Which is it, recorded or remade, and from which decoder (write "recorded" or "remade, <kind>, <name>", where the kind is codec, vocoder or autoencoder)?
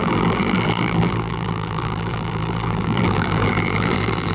remade, vocoder, BigVGAN v2